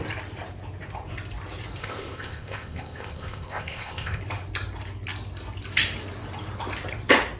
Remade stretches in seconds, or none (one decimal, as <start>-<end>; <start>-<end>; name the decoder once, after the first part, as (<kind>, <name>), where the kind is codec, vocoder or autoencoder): 1.8-4.2 (codec, ZipCodec)